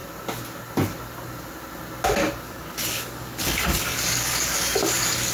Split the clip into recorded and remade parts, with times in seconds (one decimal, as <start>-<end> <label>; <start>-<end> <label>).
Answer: 0.0-2.4 recorded; 2.4-5.3 remade